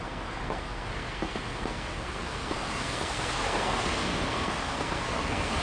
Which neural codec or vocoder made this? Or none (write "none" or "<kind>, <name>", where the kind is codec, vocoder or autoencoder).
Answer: codec, SNAC